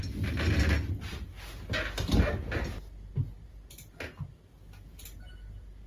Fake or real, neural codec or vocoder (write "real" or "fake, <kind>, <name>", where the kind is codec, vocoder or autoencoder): real